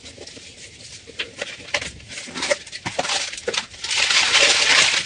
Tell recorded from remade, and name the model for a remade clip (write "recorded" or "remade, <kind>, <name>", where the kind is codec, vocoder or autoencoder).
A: recorded